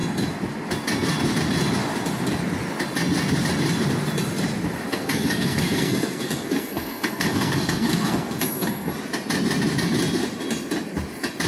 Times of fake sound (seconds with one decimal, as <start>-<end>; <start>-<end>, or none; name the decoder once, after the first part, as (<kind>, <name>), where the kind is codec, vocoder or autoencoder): 4.9-8.9 (codec, SNAC)

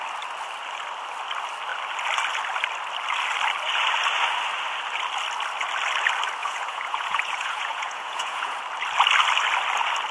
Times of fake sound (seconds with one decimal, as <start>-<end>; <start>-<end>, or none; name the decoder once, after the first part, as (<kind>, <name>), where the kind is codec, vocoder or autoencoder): 6.4-8.6 (vocoder, Vocos)

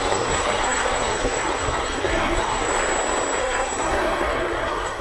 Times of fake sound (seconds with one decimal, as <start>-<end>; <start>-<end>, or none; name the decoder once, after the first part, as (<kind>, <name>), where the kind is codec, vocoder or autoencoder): 0.0-2.7 (codec, SNAC); 3.4-5.0

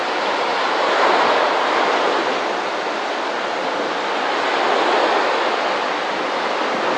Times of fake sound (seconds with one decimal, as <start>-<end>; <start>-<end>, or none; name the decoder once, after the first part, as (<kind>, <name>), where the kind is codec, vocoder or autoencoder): 0.0-1.7 (vocoder, BigVGAN v2)

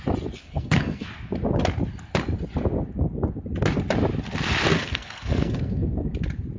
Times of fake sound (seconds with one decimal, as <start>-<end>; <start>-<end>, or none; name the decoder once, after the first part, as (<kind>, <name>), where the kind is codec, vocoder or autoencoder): 0.4-1.1 (codec, SNAC); 4.7-6.1